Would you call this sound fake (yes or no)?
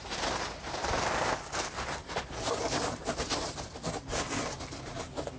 yes